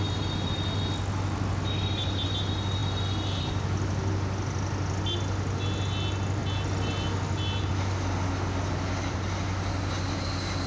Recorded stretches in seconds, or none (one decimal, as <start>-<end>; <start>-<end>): 0.0-10.7